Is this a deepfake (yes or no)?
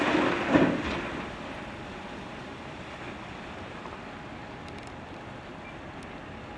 no